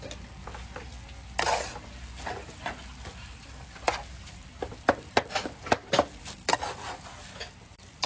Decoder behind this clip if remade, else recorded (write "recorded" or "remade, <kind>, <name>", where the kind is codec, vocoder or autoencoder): recorded